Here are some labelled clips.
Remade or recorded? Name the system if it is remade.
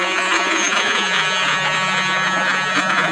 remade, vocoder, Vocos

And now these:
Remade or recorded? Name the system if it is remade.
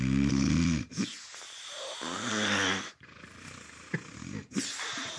recorded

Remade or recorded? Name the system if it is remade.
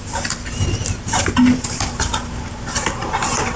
recorded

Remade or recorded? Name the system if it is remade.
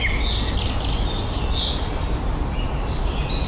recorded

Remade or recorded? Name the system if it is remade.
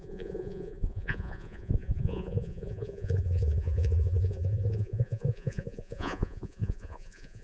remade, vocoder, Vocos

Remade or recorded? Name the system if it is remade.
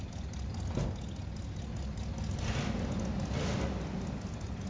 recorded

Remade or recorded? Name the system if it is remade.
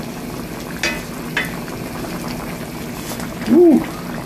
recorded